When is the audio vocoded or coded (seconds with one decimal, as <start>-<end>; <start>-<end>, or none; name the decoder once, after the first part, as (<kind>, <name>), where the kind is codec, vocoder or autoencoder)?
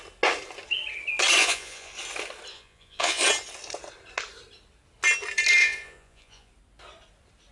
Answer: 1.4-1.9 (vocoder, Vocos); 2.5-3.2; 5.6-6.5